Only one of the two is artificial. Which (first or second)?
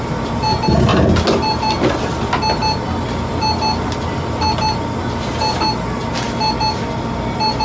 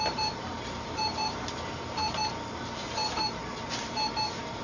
second